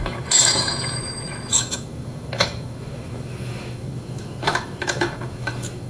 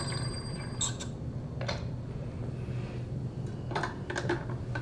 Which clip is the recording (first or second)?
second